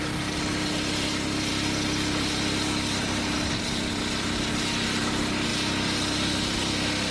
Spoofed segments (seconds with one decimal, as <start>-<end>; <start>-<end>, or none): none